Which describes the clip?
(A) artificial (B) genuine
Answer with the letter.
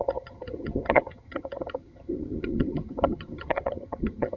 A